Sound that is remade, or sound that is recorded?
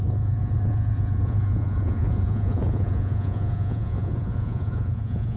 remade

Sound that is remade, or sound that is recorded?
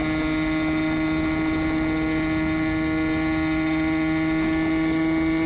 recorded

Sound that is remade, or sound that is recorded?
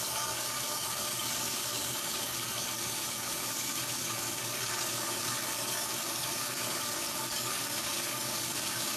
remade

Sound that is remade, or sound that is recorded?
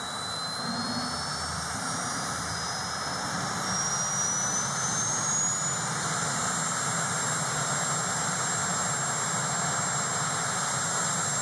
recorded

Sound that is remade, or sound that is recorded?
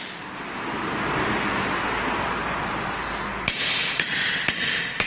recorded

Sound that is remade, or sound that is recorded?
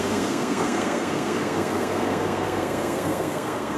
remade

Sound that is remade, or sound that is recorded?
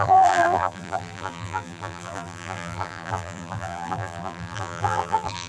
remade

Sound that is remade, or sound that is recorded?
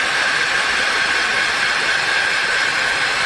remade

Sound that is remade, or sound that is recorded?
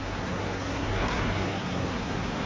remade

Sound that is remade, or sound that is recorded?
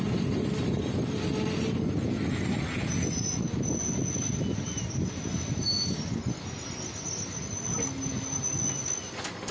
recorded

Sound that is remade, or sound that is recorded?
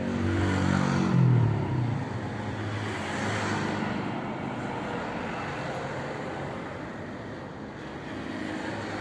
recorded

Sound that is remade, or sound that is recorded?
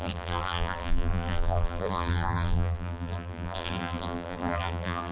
remade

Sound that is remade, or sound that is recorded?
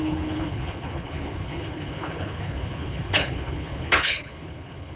remade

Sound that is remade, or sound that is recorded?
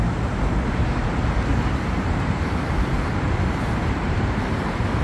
remade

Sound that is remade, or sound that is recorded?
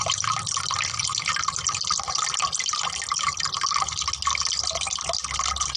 recorded